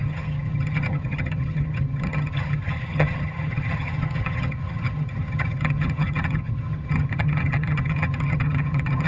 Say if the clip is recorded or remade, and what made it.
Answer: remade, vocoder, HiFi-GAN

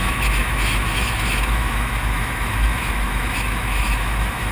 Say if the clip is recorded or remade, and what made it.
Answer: remade, autoencoder, DAC-VAE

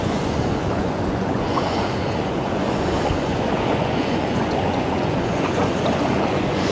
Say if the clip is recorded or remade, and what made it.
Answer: remade, vocoder, Vocos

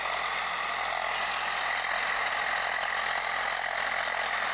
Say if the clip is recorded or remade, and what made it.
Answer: recorded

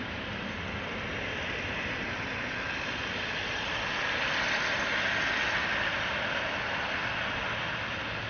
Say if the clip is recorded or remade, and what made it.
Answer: recorded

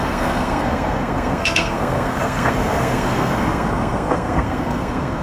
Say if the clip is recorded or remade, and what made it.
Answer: remade, codec, SNAC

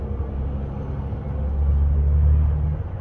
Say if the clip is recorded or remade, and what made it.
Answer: recorded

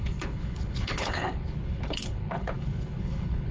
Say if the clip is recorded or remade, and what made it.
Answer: remade, codec, HILCodec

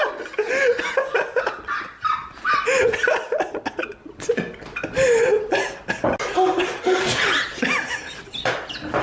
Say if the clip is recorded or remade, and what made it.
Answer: recorded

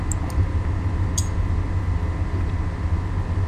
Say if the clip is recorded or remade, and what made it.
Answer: recorded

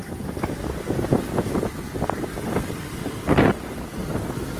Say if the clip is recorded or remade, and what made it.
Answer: recorded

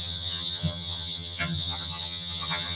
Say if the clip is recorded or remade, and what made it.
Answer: remade, vocoder, HiFi-GAN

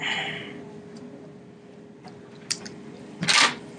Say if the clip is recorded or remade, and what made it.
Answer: recorded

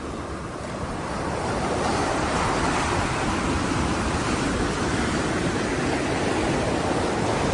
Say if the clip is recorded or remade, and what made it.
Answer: recorded